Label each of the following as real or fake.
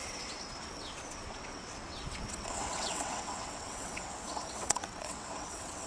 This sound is fake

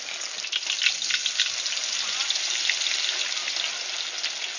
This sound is real